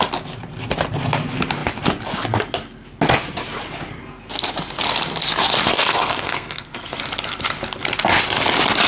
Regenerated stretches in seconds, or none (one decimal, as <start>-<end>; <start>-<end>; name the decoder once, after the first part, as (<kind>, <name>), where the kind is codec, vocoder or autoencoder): 5.7-7.0 (codec, SNAC)